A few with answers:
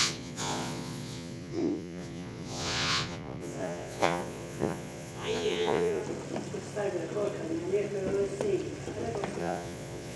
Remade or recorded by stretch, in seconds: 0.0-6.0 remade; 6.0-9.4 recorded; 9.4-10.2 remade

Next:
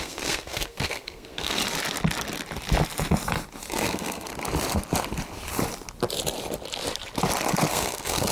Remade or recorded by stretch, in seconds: 0.0-1.6 remade; 1.6-3.7 recorded; 3.7-4.3 remade; 4.3-7.7 recorded; 7.7-8.3 remade

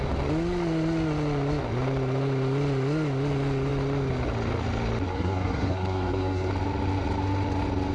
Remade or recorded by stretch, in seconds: 0.0-5.1 recorded; 5.1-6.5 remade; 6.5-7.9 recorded

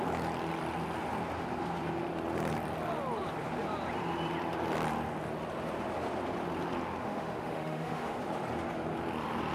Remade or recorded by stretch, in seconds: 0.0-7.0 recorded; 7.0-8.2 remade; 8.2-9.5 recorded

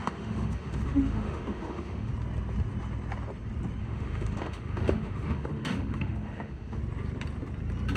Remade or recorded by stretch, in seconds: 0.0-2.1 remade; 2.1-3.8 recorded; 3.8-6.8 remade; 6.8-8.0 recorded

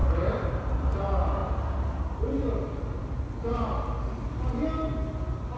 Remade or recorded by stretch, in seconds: 0.0-5.6 recorded

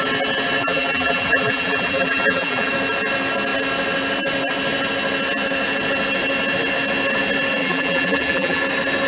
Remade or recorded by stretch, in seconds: 0.0-0.6 recorded; 0.6-2.7 remade; 2.7-7.6 recorded; 7.6-8.6 remade; 8.6-9.1 recorded